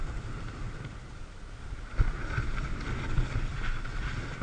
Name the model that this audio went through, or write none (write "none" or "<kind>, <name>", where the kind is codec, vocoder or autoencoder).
none